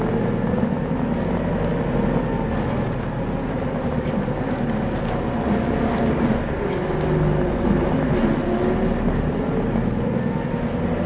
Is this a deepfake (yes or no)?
no